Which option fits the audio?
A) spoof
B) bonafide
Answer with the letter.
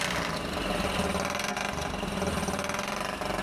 B